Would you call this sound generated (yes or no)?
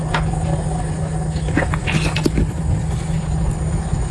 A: no